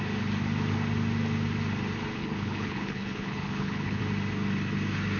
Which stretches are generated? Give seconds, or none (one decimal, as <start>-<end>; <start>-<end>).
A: 2.2-4.0